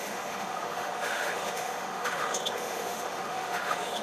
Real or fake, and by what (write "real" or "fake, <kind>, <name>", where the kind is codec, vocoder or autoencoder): fake, autoencoder, DAC-VAE